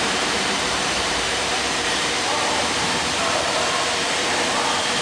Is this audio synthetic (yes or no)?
yes